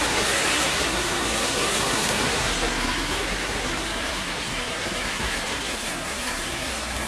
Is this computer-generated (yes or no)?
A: yes